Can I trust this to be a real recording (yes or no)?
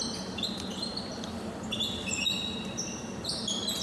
no